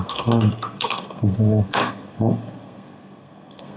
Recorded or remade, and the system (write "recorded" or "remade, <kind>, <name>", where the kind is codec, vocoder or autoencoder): remade, codec, SNAC